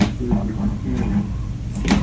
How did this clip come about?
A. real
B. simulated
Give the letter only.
A